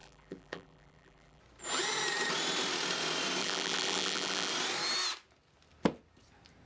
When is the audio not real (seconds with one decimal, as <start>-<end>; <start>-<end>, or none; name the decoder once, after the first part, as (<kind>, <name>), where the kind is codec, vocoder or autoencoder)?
0.0-1.4 (vocoder, BigVGAN v2); 3.4-4.5